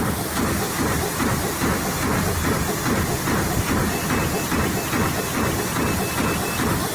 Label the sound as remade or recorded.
recorded